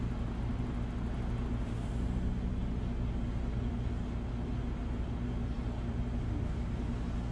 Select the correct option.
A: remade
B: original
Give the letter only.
B